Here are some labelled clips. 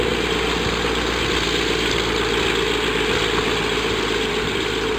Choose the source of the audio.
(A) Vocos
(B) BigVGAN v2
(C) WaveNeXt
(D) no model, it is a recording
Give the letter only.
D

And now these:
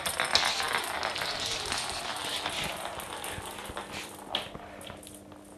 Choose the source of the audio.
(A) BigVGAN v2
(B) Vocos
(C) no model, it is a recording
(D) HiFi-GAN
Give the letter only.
C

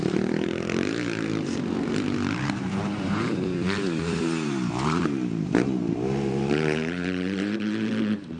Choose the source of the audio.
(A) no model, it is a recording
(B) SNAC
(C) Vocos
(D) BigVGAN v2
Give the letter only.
D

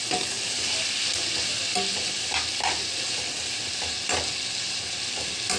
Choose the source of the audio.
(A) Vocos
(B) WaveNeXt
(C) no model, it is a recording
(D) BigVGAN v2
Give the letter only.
C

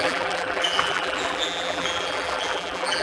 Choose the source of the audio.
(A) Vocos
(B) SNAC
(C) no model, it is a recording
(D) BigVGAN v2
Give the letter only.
D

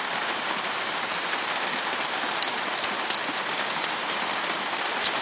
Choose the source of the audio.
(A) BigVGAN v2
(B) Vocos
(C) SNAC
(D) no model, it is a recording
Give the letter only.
D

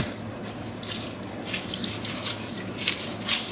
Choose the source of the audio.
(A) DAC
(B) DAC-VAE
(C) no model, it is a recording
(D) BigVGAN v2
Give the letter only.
C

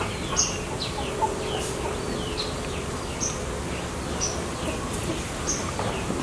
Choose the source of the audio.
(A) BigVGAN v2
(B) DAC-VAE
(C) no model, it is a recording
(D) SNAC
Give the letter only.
C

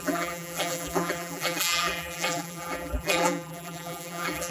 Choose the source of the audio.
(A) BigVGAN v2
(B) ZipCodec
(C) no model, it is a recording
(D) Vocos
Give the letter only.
A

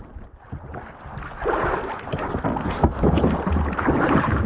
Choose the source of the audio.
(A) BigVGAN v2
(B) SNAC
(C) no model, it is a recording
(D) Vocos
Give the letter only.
C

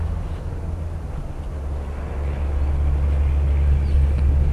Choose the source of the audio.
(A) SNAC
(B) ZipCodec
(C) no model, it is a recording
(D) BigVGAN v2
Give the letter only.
C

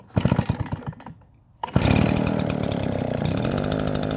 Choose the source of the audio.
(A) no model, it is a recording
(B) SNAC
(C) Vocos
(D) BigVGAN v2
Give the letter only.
A